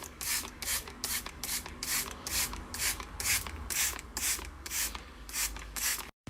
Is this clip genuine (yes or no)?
no